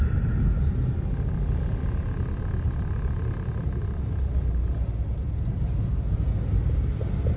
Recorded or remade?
recorded